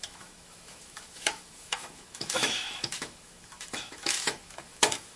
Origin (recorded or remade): remade